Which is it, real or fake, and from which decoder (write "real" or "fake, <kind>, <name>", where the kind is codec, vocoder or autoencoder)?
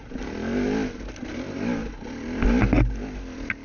real